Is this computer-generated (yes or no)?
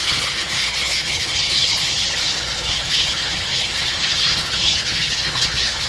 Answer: yes